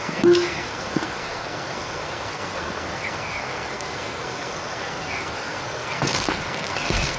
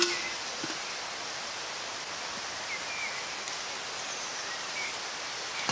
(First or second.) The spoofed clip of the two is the first